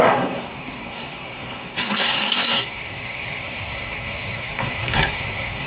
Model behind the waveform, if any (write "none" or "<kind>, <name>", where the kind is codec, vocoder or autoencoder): codec, SNAC